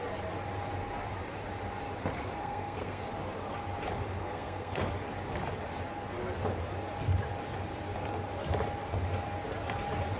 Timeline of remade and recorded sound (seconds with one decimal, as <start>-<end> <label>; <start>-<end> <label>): 0.0-2.4 recorded; 2.4-3.0 remade; 3.0-4.2 recorded; 4.2-4.9 remade; 4.9-10.2 recorded